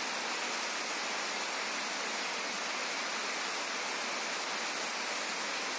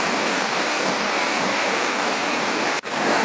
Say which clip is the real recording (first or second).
first